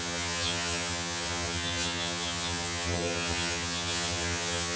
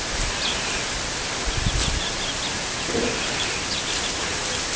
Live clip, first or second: second